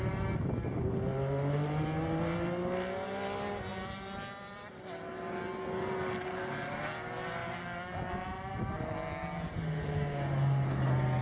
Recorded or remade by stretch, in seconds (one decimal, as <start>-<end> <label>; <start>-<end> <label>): 0.0-11.2 recorded